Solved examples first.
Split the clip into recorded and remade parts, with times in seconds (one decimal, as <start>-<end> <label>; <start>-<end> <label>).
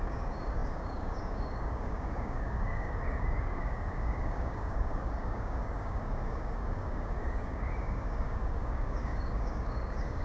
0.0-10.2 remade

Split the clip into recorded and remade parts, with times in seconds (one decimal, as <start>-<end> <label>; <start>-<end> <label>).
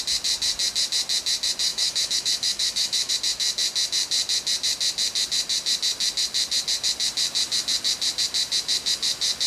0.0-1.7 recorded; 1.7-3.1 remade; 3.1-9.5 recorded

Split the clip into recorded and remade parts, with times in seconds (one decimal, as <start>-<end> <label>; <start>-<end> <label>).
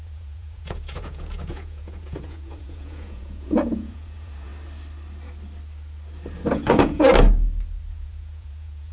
0.0-4.5 remade; 4.5-6.5 recorded; 6.5-7.1 remade; 7.1-7.9 recorded; 7.9-8.9 remade